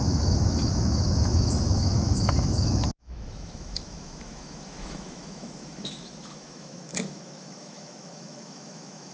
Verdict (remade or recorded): remade